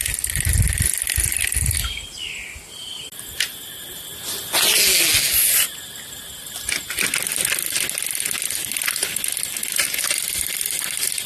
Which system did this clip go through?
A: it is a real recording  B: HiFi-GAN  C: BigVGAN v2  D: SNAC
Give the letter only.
A